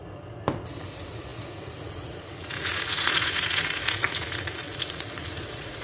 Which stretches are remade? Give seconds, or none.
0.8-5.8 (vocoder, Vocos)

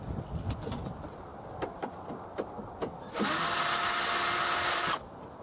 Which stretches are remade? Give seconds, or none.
none

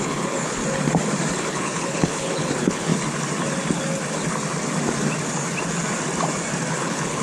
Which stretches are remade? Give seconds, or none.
0.0-0.6 (codec, HILCodec); 1.4-2.9; 6.7-7.2

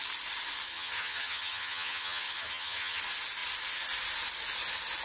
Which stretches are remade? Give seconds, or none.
0.7-3.0 (vocoder, HiFi-GAN)

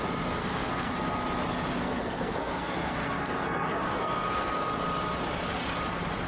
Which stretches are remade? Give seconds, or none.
0.4-0.9 (codec, SNAC); 1.8-4.6